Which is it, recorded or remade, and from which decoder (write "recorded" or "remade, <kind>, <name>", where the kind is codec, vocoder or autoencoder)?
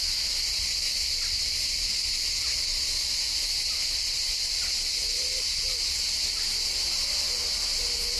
recorded